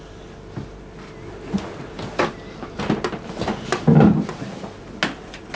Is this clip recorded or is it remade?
recorded